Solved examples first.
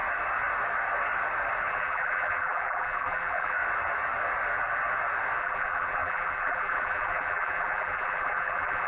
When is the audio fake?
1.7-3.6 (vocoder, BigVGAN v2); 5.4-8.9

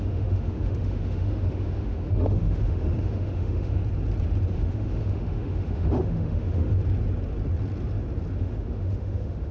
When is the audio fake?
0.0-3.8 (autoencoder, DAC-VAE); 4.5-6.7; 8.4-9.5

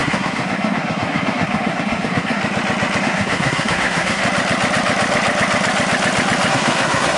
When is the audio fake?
0.0-2.4 (codec, SNAC); 3.0-4.2; 6.5-7.2

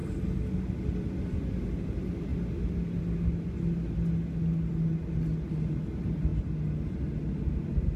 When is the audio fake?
1.7-2.3 (vocoder, BigVGAN v2); 5.5-6.3; 7.5-8.0